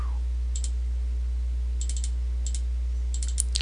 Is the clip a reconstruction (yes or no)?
no